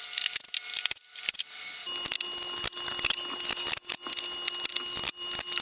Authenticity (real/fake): real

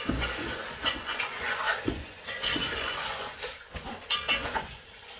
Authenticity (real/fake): fake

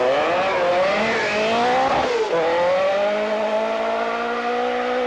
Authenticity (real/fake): real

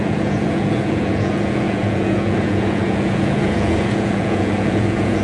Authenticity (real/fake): fake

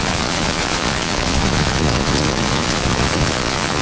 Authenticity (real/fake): fake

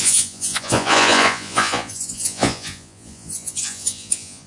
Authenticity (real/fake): fake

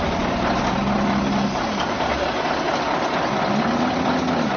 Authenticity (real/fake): real